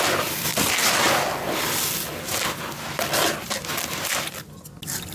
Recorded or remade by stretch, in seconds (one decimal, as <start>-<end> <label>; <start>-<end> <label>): 0.0-5.1 recorded